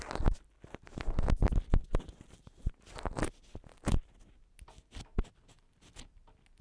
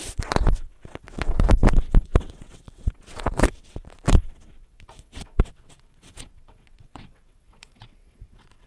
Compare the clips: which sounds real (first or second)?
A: first